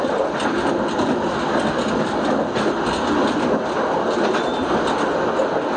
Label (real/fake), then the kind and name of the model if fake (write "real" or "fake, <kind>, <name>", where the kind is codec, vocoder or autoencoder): real